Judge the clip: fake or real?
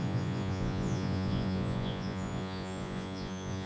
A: fake